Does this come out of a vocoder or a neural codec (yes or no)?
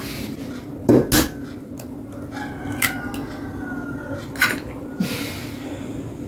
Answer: no